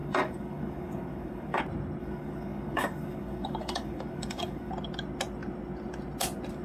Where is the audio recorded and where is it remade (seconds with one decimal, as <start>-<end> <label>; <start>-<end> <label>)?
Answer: 0.0-1.6 remade; 1.6-2.0 recorded; 2.0-4.7 remade; 4.7-6.6 recorded